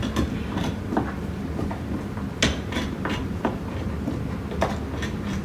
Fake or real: real